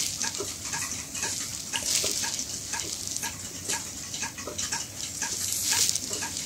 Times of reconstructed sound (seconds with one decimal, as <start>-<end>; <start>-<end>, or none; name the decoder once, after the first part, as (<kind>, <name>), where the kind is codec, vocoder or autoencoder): none